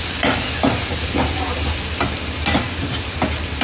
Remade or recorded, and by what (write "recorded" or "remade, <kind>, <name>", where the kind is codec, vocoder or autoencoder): recorded